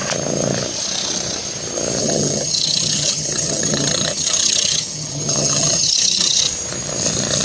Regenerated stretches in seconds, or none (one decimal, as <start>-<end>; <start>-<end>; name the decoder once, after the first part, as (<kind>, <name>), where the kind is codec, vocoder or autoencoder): 2.0-6.4 (vocoder, HiFi-GAN)